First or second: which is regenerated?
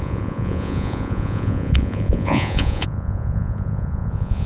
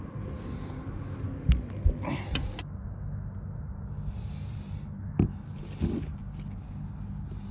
first